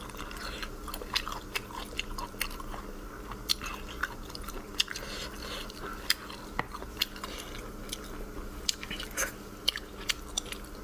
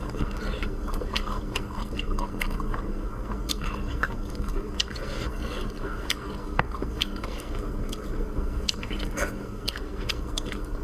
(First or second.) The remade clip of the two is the second